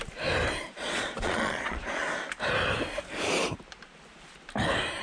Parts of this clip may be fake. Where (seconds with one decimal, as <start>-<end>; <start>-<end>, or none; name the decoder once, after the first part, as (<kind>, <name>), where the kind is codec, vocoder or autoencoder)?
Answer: 0.7-2.0 (vocoder, Vocos)